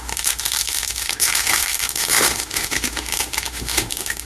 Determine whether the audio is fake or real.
fake